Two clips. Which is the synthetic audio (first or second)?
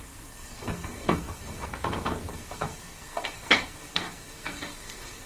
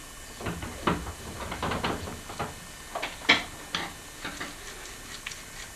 first